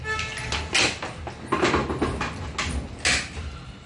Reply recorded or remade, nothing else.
recorded